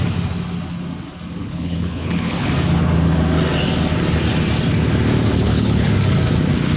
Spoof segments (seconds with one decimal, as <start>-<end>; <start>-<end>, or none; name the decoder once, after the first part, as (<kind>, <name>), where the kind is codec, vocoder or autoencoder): 1.4-2.5 (codec, HILCodec); 5.3-5.9